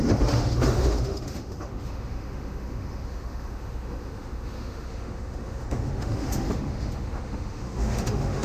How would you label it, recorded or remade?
remade